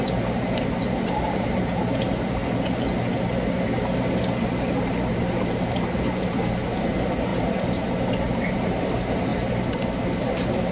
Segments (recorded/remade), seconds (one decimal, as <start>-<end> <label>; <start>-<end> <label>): 0.0-2.4 remade; 2.4-4.9 recorded; 4.9-9.3 remade; 9.3-10.7 recorded